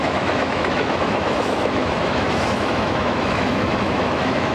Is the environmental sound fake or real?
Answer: fake